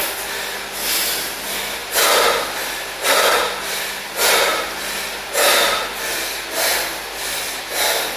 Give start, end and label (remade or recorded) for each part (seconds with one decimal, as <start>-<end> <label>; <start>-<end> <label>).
0.0-8.2 recorded